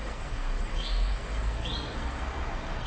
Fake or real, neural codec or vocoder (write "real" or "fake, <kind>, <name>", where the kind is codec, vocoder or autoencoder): fake, codec, SNAC